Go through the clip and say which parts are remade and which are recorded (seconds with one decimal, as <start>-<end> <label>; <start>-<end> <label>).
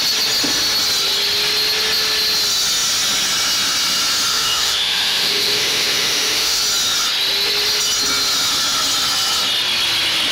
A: 0.0-4.3 recorded; 4.3-6.6 remade; 6.6-10.3 recorded